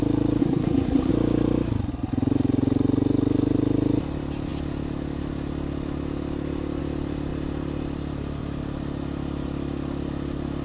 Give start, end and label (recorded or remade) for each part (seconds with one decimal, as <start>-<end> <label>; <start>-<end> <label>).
0.0-0.4 recorded; 0.4-1.1 remade; 1.1-10.6 recorded